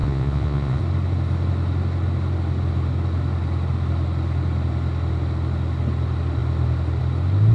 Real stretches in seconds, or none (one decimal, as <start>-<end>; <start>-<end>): 0.8-7.5